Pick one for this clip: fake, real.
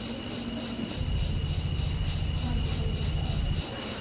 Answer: real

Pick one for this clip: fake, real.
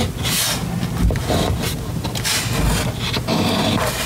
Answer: real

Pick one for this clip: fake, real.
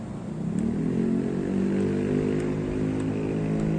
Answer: real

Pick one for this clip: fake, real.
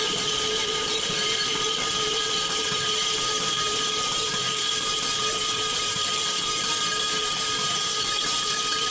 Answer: fake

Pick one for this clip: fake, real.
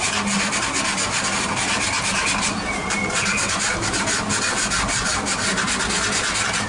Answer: real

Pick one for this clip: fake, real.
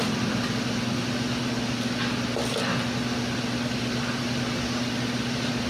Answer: real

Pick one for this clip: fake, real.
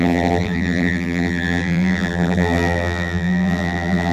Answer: fake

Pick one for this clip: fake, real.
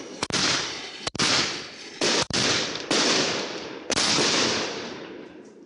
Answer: fake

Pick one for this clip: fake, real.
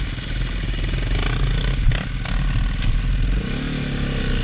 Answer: real